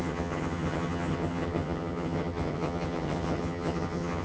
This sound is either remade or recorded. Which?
remade